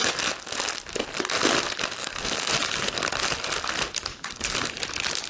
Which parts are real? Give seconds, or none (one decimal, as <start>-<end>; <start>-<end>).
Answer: 0.0-2.0; 2.5-4.1; 4.7-5.3